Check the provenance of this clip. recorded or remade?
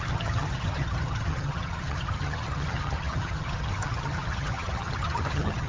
remade